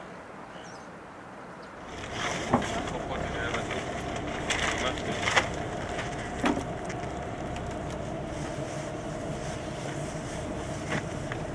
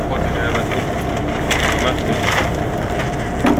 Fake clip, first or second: first